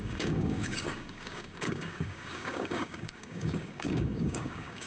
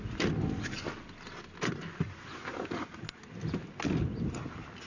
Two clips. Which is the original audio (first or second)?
second